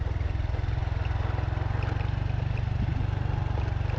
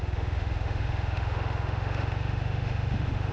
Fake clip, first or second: second